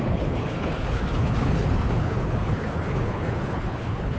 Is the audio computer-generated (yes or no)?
yes